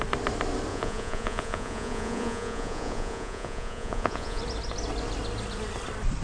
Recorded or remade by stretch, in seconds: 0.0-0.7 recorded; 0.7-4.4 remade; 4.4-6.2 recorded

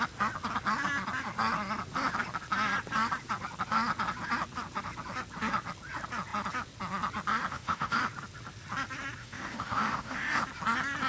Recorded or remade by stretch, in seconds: 0.0-7.5 recorded; 7.5-8.0 remade; 8.0-9.2 recorded; 9.2-10.4 remade; 10.4-11.1 recorded

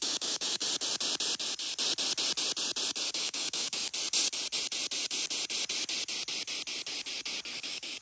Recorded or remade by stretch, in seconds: 0.0-0.6 remade; 0.6-3.1 recorded; 3.1-3.9 remade; 3.9-7.6 recorded; 7.6-8.0 remade

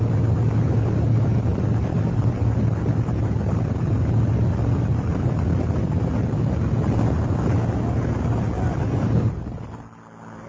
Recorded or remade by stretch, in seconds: 0.0-1.5 recorded; 1.5-5.9 remade; 5.9-10.5 recorded

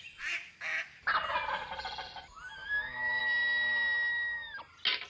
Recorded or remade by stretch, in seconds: 0.0-2.6 recorded; 2.6-3.2 remade; 3.2-5.1 recorded

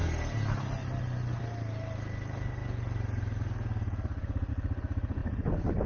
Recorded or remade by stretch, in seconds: 0.0-5.9 recorded

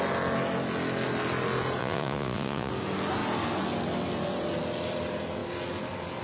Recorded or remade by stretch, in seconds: 0.0-1.8 recorded; 1.8-2.7 remade; 2.7-6.2 recorded